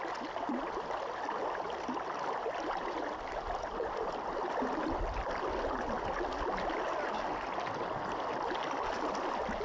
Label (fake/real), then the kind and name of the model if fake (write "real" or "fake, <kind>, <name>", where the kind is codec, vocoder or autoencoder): real